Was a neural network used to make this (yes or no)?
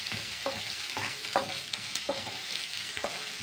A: yes